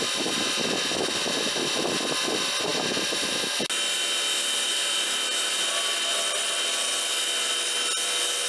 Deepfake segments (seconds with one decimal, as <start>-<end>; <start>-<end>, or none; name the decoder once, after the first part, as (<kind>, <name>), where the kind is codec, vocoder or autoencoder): none